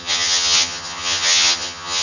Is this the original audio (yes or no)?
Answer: no